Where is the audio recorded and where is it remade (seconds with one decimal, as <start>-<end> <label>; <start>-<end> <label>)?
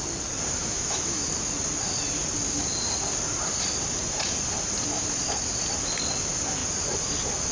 0.0-0.6 recorded; 0.6-1.3 remade; 1.3-7.5 recorded